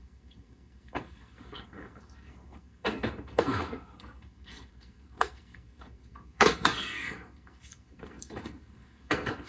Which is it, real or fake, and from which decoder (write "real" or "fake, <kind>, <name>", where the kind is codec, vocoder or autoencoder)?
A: fake, codec, SNAC